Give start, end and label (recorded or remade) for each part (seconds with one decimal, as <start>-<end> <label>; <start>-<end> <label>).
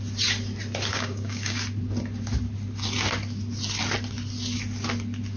0.0-0.9 recorded; 0.9-1.6 remade; 1.6-5.4 recorded